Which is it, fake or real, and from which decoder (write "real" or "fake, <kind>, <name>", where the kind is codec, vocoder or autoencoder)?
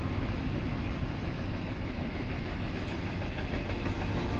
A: fake, autoencoder, DAC-VAE